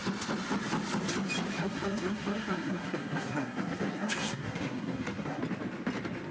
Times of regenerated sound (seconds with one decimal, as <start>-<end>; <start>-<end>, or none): 1.6-5.4